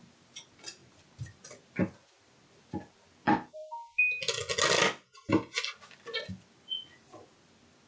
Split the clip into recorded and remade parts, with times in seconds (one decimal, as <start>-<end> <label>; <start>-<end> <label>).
0.0-7.9 recorded